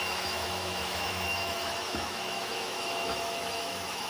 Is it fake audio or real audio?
fake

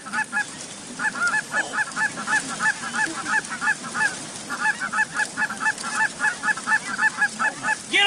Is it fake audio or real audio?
real